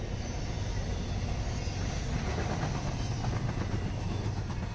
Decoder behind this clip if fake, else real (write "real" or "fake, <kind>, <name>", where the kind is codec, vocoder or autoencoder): real